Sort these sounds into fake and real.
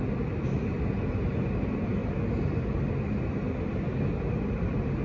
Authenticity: real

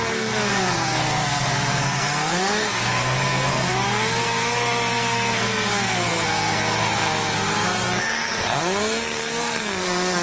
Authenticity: fake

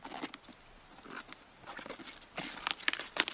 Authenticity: real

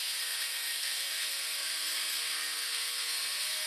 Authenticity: fake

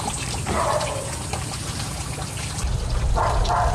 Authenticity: real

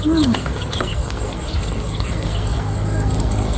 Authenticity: fake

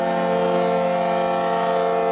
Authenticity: real